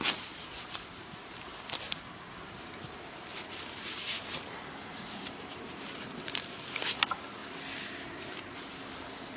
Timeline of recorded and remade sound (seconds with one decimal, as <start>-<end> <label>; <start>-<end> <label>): 0.0-7.4 remade; 7.4-8.1 recorded; 8.1-9.4 remade